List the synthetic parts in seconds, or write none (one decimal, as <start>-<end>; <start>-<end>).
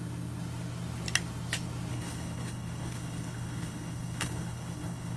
1.9-5.2